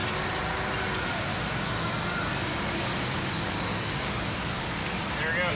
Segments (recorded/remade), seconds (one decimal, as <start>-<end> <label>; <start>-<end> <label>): 0.0-3.3 recorded; 3.3-4.8 remade; 4.8-5.5 recorded